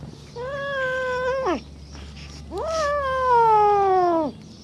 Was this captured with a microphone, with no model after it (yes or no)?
yes